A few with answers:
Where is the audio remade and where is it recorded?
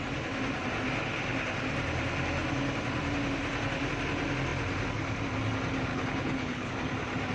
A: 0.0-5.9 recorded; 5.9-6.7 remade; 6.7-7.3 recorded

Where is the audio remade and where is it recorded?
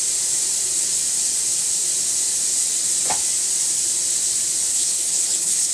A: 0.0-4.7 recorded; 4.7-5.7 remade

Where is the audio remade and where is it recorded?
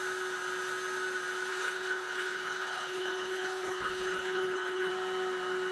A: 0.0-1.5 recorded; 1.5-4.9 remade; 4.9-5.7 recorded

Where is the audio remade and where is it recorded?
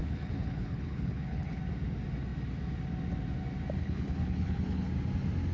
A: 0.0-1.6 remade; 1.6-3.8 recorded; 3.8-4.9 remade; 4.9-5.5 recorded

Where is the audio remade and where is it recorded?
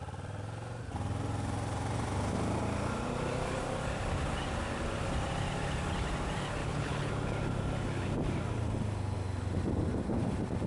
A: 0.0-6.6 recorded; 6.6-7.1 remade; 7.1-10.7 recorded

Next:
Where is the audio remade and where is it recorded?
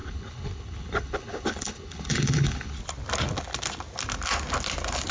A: 0.0-2.8 remade; 2.8-5.1 recorded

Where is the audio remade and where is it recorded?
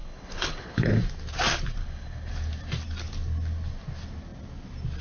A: 0.0-1.0 remade; 1.0-1.8 recorded; 1.8-2.3 remade; 2.3-5.0 recorded